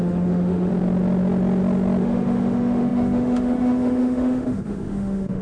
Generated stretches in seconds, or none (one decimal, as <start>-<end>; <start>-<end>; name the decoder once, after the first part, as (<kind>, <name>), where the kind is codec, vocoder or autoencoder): 0.0-0.7 (autoencoder, DAC-VAE); 2.0-5.4